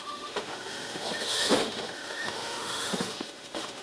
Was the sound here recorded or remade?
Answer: remade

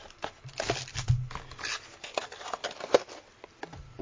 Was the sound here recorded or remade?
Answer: recorded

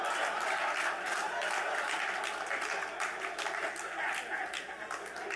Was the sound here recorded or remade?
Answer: recorded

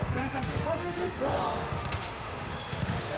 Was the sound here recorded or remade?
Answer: remade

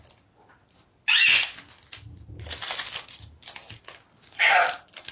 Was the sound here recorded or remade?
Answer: recorded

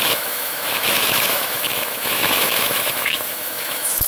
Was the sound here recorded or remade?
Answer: remade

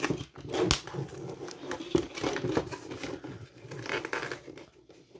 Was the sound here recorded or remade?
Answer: recorded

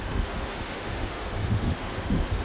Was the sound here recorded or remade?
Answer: remade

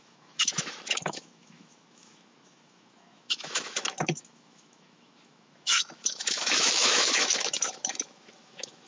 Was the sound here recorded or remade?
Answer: remade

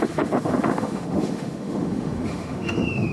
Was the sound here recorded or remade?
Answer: remade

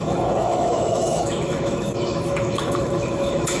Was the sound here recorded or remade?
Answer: remade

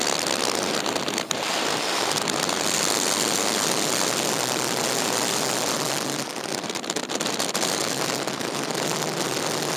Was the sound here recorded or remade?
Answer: recorded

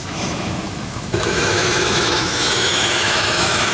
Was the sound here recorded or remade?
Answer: remade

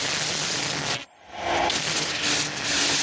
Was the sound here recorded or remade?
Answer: recorded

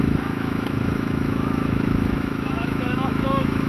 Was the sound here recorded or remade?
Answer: remade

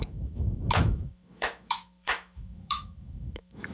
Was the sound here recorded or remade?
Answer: remade